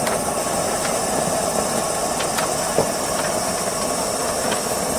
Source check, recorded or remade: recorded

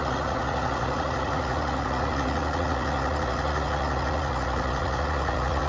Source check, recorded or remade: remade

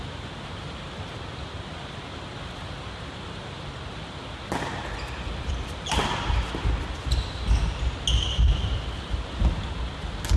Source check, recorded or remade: recorded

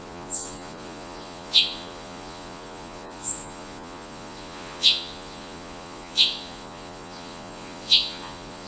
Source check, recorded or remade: remade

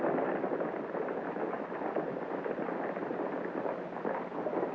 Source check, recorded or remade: recorded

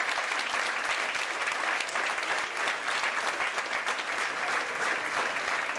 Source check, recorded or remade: recorded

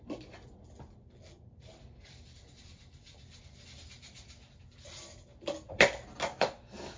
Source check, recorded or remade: recorded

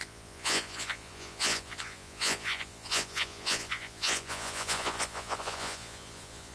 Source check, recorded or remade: remade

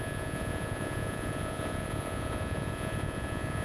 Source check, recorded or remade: remade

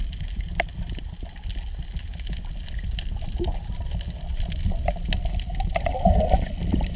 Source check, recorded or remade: recorded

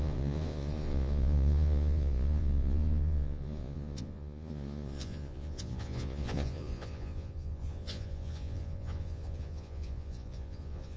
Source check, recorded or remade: remade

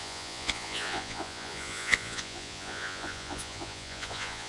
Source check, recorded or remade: remade